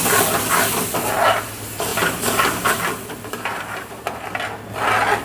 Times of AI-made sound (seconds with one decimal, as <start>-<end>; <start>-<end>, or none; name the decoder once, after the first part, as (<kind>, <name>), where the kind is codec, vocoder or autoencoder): 1.9-4.3 (vocoder, BigVGAN v2)